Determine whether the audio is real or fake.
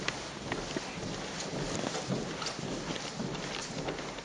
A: real